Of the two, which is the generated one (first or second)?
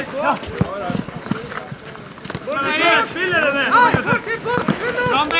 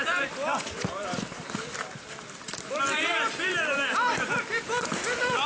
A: second